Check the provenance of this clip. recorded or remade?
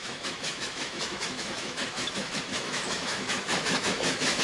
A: remade